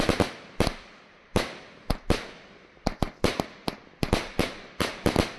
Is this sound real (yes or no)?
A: yes